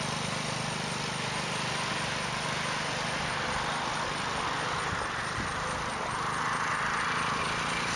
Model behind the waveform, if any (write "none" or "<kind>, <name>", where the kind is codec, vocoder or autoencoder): none